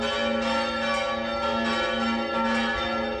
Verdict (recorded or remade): recorded